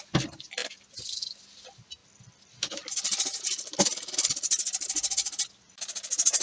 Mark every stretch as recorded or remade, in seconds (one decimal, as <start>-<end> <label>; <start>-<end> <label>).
0.0-6.4 recorded